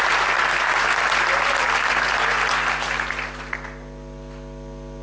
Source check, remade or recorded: recorded